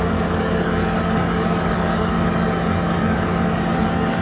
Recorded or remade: remade